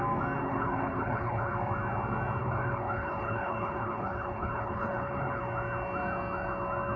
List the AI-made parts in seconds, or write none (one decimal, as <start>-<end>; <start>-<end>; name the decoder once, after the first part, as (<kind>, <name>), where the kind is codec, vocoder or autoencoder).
0.4-1.5 (codec, HILCodec); 2.4-5.4